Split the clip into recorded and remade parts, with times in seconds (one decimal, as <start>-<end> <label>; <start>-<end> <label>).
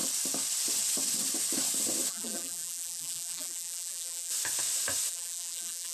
0.0-2.1 recorded; 2.1-4.3 remade; 4.3-5.1 recorded; 5.1-5.9 remade